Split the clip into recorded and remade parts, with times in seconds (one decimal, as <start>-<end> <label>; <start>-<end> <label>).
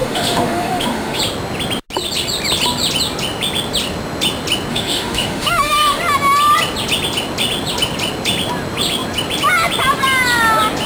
0.0-1.2 remade; 1.2-4.7 recorded; 4.7-6.0 remade; 6.0-10.9 recorded